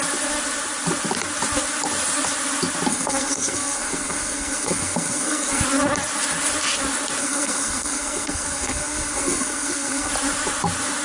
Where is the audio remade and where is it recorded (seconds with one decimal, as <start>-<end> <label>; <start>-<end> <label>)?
0.0-2.9 recorded; 2.9-5.6 remade; 5.6-7.2 recorded; 7.2-10.1 remade; 10.1-11.0 recorded